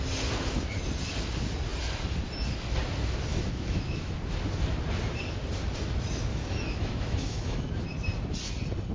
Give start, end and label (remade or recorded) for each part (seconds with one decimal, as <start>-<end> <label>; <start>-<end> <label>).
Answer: 0.0-3.3 recorded; 3.3-4.1 remade; 4.1-6.3 recorded; 6.3-7.7 remade; 7.7-8.9 recorded